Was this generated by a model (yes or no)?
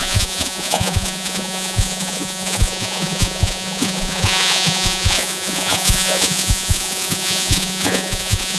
yes